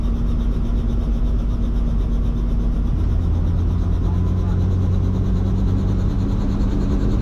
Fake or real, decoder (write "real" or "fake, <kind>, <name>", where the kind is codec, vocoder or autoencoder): real